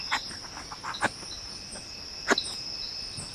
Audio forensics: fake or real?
real